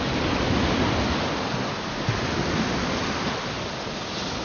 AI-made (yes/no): no